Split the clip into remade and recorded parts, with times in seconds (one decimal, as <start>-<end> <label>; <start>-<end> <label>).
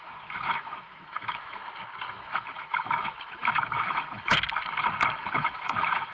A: 0.0-1.6 remade; 1.6-2.1 recorded; 2.1-4.3 remade; 4.3-5.2 recorded; 5.2-6.1 remade